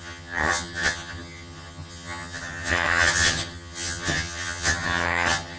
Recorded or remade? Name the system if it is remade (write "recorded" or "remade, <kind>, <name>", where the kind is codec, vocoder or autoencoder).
remade, vocoder, HiFi-GAN